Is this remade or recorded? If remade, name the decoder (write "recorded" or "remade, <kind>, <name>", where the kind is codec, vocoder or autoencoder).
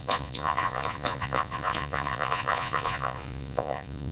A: remade, vocoder, Vocos